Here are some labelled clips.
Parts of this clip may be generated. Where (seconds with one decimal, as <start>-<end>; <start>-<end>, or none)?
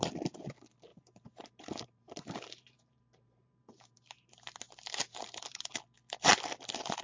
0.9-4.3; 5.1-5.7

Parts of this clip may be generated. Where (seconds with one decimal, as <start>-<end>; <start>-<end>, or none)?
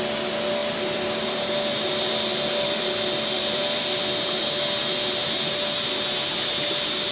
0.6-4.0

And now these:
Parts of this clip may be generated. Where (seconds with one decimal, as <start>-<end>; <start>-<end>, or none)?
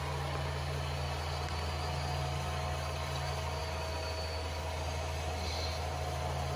none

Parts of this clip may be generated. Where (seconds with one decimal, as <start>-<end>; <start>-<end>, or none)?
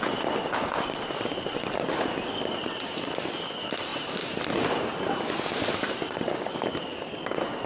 3.9-6.2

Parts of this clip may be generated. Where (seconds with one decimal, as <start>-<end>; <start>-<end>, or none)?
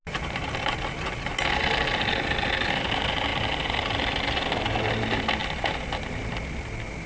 5.4-6.3